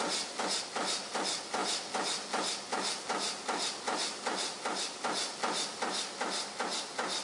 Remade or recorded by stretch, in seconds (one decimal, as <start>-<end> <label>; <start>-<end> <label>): 0.0-7.2 recorded

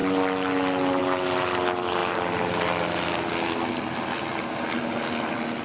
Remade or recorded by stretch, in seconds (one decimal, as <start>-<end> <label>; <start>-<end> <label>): 0.0-5.6 recorded

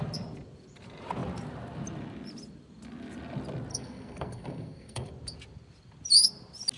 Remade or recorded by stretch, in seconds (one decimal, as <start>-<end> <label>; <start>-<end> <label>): 0.0-3.7 recorded; 3.7-5.1 remade; 5.1-6.8 recorded

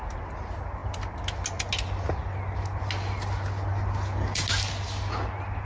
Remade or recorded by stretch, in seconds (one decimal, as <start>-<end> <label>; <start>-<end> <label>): 0.0-5.6 recorded

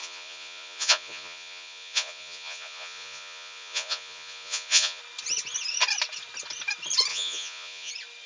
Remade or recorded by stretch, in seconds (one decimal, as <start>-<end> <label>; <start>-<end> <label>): 0.0-5.0 remade; 5.0-7.1 recorded; 7.1-7.9 remade; 7.9-8.3 recorded

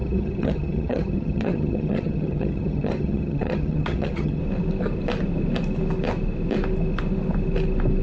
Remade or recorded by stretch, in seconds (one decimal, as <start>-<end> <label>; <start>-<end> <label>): 0.0-4.4 remade; 4.4-8.0 recorded

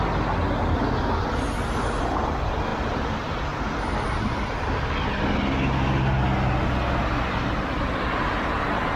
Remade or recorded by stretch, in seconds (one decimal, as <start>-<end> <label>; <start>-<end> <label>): 0.0-9.0 recorded

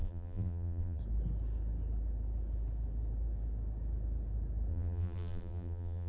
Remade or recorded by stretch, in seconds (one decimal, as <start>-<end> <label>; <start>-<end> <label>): 0.0-1.0 remade; 1.0-4.7 recorded; 4.7-6.1 remade